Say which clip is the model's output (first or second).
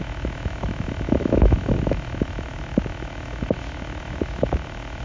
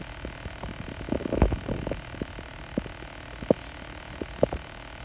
first